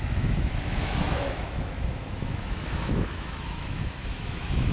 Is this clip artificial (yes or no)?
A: yes